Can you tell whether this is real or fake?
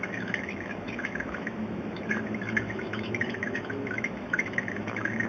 fake